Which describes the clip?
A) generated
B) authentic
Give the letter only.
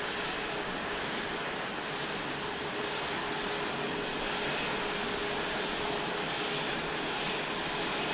B